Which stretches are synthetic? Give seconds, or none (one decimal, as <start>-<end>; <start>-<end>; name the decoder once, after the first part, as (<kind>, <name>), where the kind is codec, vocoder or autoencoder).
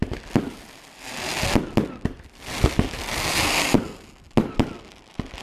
none